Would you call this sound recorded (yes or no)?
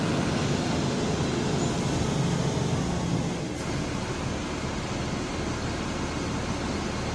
yes